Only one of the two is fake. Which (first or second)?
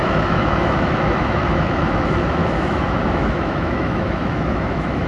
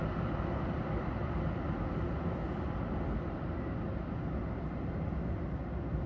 first